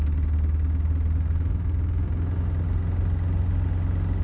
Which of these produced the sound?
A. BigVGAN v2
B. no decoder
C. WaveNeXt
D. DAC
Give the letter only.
B